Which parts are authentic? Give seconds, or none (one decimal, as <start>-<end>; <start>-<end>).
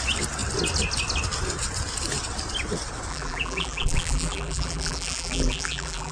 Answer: 0.0-3.1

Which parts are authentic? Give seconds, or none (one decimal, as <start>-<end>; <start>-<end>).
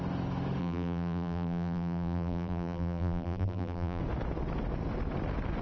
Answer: 0.0-0.6; 4.0-5.6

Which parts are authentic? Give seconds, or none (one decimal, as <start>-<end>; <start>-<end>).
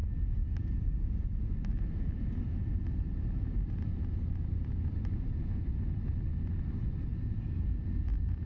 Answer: 0.0-0.6; 1.7-2.4